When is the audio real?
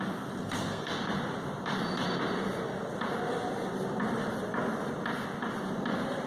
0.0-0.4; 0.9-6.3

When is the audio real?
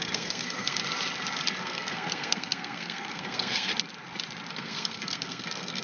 0.8-1.6; 3.7-4.5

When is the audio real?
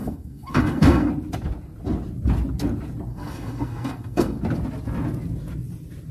1.1-3.1; 4.4-6.1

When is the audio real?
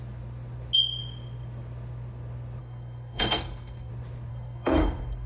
0.0-2.6; 3.9-4.3